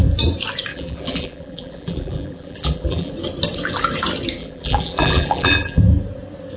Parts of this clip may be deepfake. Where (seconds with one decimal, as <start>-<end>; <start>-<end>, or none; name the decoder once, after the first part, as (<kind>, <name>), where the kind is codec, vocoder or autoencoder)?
0.7-3.1 (vocoder, BigVGAN v2); 4.4-5.8